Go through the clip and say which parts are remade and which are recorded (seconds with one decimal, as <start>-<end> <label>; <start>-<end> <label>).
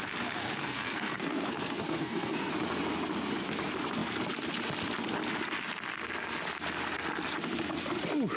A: 0.0-0.6 recorded; 0.6-2.5 remade; 2.5-8.4 recorded